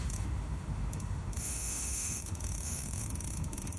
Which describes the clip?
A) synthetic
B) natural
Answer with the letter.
A